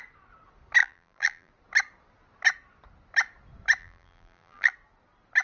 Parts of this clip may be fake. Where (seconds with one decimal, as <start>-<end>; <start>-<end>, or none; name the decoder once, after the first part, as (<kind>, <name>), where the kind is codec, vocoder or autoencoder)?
0.8-1.5 (vocoder, BigVGAN v2); 3.8-4.7